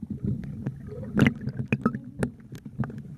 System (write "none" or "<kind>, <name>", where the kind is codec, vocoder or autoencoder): none